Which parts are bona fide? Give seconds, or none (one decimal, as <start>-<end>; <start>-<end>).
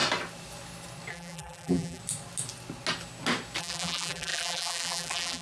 0.0-1.1; 2.0-3.6